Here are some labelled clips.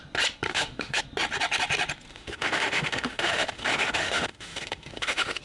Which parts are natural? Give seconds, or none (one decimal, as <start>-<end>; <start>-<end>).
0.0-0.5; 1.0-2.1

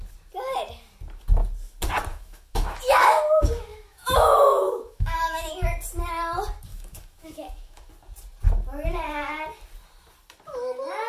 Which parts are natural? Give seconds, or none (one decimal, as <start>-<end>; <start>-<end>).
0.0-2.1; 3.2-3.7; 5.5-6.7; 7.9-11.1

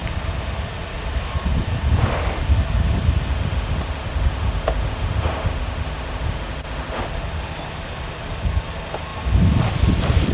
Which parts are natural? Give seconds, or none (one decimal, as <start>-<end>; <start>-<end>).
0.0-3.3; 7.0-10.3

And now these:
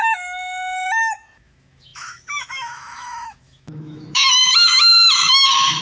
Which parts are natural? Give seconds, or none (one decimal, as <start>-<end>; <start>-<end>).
none

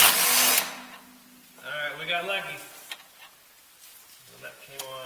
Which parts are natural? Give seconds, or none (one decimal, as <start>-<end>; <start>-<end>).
0.0-4.1

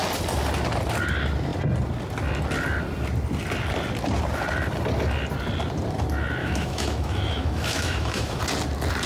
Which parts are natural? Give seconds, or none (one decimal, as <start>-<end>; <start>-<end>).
0.0-6.4; 8.4-9.1

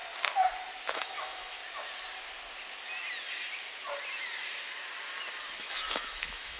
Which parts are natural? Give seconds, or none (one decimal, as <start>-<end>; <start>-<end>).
0.0-0.9; 1.6-5.6

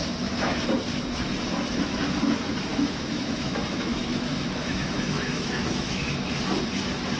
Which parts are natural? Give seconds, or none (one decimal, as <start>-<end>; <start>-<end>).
0.7-2.7; 6.1-7.2